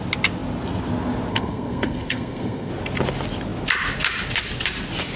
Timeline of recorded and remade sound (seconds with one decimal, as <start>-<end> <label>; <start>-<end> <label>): 0.0-1.3 recorded; 1.3-2.7 remade; 2.7-5.2 recorded

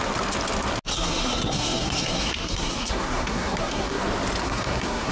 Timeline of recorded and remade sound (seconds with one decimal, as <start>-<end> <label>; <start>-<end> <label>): 0.0-0.9 recorded; 0.9-4.0 remade; 4.0-4.4 recorded; 4.4-5.1 remade

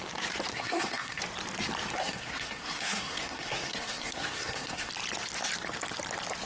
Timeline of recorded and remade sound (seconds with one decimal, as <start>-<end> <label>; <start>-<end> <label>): 0.0-0.5 recorded; 0.5-1.2 remade; 1.2-2.0 recorded; 2.0-4.9 remade; 4.9-6.5 recorded

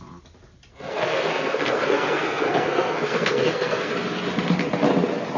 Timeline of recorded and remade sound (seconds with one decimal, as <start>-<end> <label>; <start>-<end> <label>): 0.0-0.7 recorded; 0.7-3.9 remade; 3.9-5.4 recorded